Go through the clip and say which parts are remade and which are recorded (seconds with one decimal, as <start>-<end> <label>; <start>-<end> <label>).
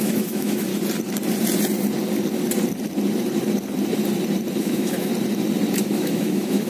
0.0-0.7 remade; 0.7-4.6 recorded; 4.6-5.1 remade; 5.1-5.8 recorded; 5.8-6.7 remade